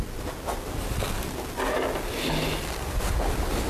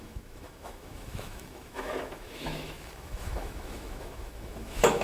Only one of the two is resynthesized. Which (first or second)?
second